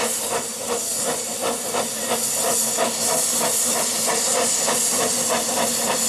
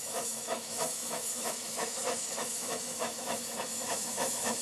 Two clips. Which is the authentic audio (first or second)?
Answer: first